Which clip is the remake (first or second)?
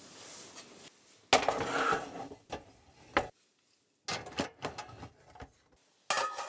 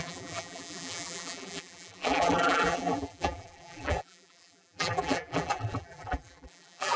second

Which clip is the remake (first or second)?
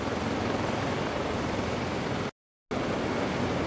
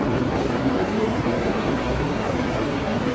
second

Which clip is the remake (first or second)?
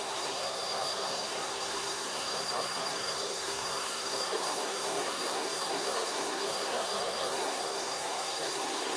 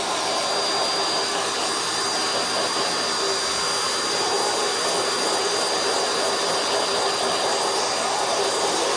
first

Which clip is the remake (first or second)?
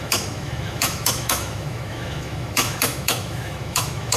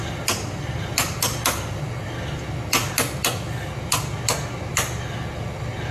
first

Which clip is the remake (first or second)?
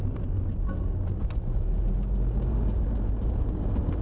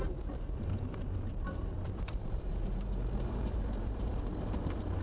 second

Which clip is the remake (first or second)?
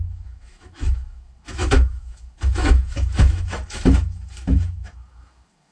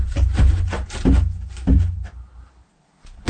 first